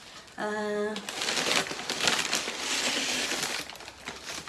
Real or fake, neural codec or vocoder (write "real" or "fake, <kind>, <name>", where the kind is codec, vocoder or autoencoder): real